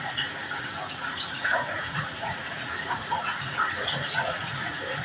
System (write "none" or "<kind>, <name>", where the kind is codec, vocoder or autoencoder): vocoder, Vocos